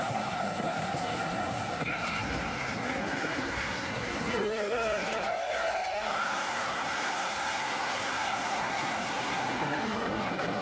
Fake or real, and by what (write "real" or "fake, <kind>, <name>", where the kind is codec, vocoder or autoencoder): fake, codec, SNAC